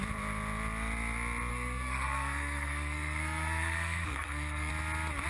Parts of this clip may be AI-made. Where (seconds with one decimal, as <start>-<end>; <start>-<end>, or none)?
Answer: 1.5-4.7